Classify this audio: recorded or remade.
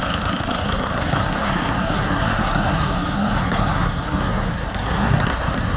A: remade